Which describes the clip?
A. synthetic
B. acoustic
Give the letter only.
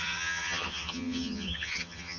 A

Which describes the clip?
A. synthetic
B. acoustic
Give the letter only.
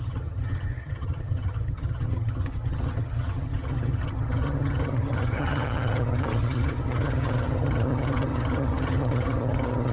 A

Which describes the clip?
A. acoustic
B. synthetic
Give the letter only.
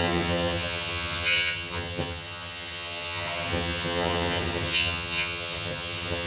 B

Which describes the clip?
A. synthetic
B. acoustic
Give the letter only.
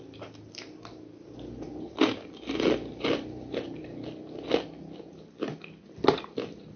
B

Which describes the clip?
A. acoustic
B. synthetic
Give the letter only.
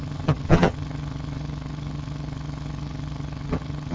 B